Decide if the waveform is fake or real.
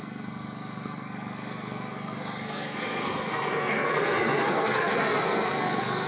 fake